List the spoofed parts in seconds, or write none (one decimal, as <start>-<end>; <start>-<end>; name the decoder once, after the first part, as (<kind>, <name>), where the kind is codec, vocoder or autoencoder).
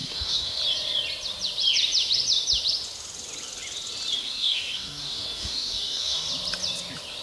0.0-0.6 (codec, DAC); 4.2-6.3